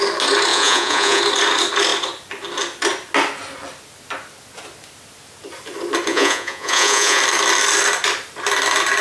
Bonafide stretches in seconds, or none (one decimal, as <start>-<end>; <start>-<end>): 0.0-0.5; 1.2-6.1; 7.2-9.0